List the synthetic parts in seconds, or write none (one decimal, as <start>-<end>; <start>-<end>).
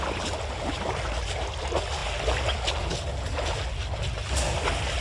none